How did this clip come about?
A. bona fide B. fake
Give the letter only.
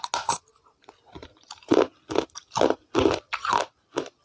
A